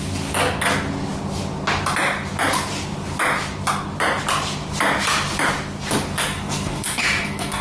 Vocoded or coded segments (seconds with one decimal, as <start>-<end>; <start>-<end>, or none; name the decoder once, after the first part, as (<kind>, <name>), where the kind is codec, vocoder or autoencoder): 6.3-7.6 (codec, SNAC)